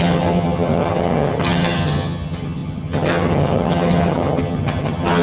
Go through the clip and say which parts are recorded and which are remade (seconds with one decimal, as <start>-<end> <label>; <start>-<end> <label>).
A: 0.0-5.2 remade